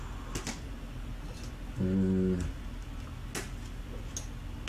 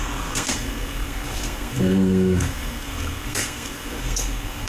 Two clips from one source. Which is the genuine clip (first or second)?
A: first